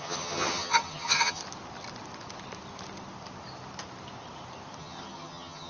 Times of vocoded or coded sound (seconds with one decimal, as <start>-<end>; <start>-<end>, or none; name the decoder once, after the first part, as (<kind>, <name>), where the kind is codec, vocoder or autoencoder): 0.0-1.4 (vocoder, HiFi-GAN); 4.8-5.7